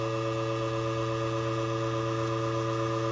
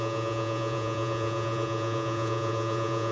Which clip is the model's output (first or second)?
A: second